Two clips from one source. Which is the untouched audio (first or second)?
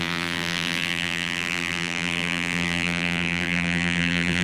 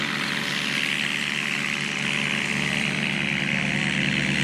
second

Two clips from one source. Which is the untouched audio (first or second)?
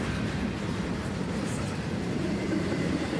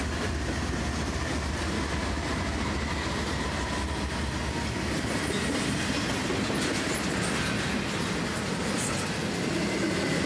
second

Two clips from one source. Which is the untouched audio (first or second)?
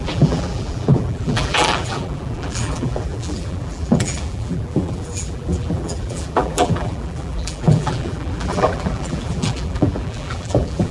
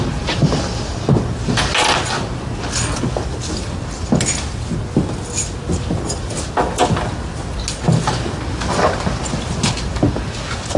second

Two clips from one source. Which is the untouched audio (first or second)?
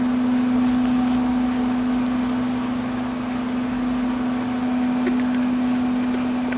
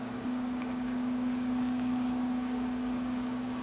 first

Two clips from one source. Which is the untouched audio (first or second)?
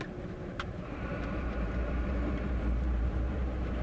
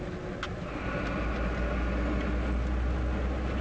second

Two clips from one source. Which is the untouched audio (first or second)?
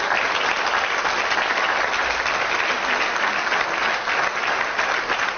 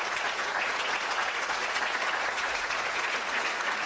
first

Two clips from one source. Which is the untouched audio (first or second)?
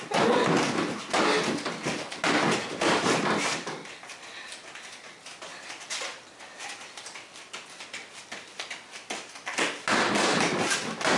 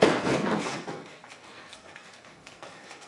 first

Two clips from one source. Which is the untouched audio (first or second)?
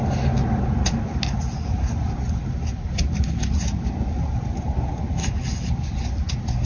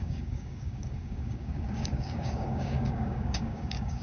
first